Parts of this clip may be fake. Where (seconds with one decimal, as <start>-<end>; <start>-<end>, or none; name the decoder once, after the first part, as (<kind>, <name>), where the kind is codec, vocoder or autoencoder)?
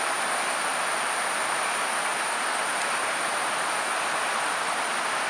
none